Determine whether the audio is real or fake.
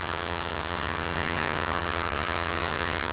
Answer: fake